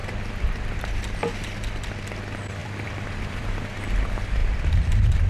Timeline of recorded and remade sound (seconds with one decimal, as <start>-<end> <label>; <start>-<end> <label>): 0.0-0.8 remade; 0.8-2.6 recorded; 2.6-3.8 remade; 3.8-5.3 recorded